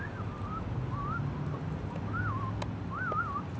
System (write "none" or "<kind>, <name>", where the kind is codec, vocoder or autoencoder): none